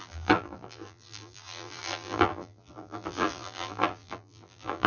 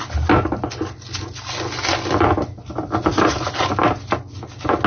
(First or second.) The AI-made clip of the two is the first